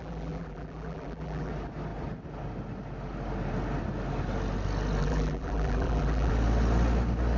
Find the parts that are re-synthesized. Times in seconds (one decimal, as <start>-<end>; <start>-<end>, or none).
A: 0.0-1.5; 5.0-6.3